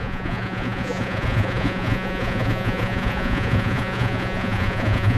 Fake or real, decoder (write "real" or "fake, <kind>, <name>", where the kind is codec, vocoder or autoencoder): fake, vocoder, Vocos